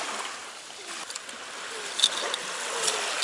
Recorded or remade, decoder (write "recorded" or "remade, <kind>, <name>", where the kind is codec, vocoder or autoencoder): recorded